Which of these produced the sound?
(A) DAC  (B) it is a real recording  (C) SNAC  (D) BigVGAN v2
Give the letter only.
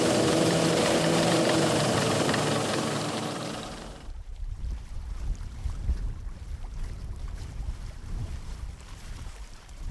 D